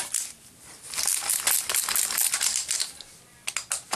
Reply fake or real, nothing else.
real